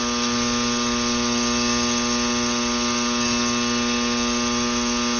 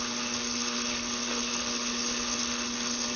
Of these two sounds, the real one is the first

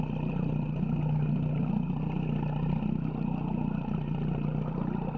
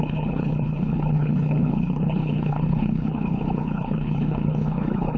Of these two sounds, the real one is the first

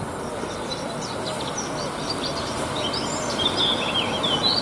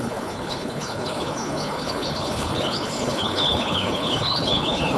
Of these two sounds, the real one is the first